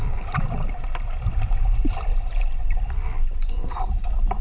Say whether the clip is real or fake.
fake